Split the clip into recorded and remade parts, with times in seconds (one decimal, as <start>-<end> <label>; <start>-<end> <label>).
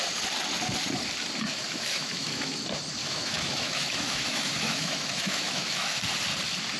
0.0-1.5 recorded; 1.5-2.6 remade; 2.6-3.0 recorded; 3.0-6.0 remade; 6.0-6.8 recorded